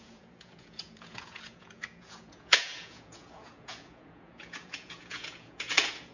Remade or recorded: remade